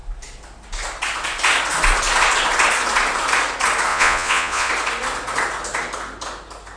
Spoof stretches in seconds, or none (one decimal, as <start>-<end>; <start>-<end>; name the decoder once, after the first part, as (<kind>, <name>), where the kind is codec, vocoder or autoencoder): 3.9-4.7 (vocoder, Vocos)